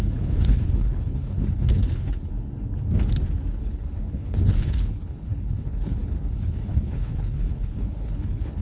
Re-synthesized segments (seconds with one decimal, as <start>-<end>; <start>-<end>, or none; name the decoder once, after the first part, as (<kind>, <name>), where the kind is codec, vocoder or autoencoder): 0.0-2.3 (codec, HILCodec); 3.6-8.6